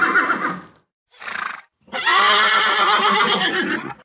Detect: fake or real real